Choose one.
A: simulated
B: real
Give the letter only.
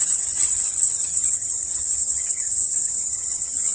A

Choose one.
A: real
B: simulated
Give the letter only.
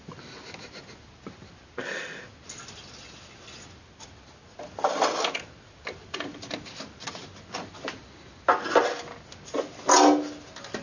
A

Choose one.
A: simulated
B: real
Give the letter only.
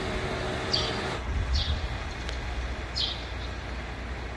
B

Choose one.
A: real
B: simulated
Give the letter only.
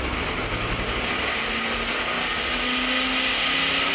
A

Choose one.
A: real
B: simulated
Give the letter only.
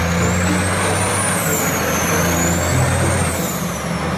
A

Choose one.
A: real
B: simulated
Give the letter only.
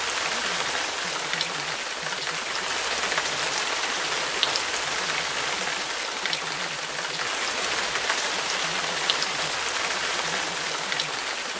A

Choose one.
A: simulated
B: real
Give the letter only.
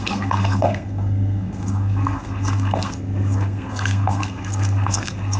A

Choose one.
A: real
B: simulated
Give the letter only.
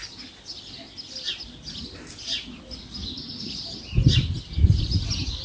A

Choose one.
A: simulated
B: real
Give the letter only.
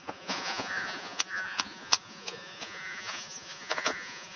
A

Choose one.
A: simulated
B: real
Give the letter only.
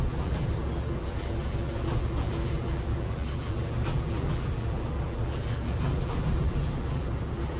A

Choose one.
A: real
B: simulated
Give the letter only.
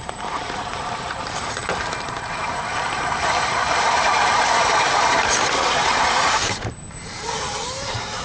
B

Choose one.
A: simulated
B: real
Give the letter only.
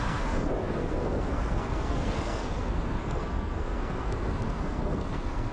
A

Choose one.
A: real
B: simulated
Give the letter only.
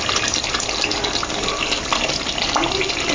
A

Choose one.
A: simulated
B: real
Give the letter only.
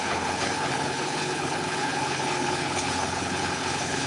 A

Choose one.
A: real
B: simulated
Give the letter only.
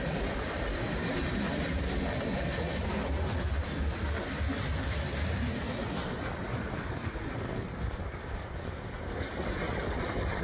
B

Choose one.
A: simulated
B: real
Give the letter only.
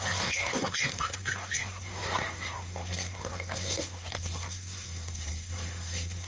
A